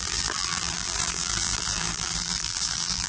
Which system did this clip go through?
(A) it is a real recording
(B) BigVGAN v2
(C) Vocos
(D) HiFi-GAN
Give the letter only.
B